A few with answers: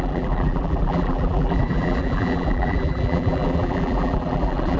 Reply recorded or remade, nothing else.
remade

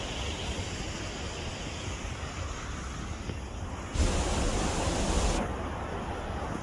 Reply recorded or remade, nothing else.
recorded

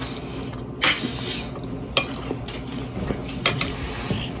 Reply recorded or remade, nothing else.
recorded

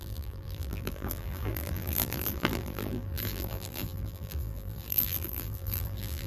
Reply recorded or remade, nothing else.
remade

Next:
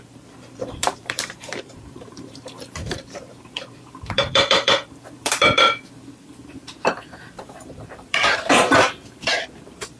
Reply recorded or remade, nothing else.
remade